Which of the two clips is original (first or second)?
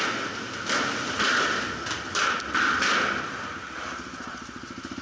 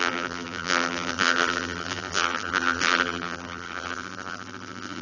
first